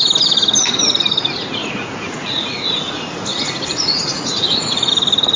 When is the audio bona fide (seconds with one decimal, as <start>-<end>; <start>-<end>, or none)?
0.0-1.6; 2.8-3.3; 4.9-5.4